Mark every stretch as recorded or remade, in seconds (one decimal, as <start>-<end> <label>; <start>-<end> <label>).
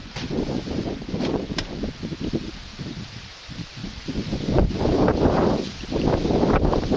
0.0-2.0 remade; 2.0-3.8 recorded; 3.8-5.1 remade; 5.1-7.0 recorded